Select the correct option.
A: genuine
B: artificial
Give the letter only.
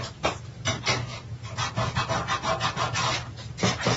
A